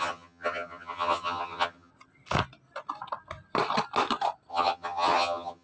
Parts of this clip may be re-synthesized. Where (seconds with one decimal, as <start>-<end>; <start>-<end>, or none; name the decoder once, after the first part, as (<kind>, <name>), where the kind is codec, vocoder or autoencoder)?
0.0-1.9 (vocoder, HiFi-GAN); 4.5-5.6